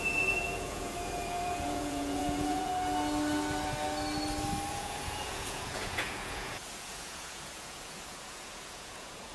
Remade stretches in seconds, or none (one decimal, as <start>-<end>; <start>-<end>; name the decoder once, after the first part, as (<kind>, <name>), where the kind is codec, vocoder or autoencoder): 0.0-2.7 (vocoder, Vocos); 4.7-9.3